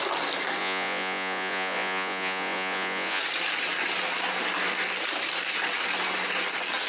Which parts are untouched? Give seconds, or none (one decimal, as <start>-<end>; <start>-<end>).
0.0-0.6; 3.2-6.9